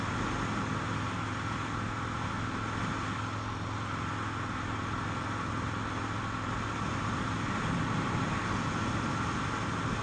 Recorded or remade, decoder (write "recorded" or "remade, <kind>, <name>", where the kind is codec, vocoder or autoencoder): recorded